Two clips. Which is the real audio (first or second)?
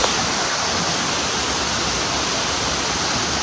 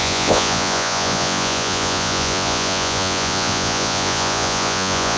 first